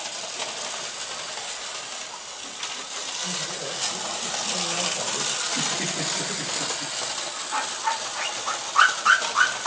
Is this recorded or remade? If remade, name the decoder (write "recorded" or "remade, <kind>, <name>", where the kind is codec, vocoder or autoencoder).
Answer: recorded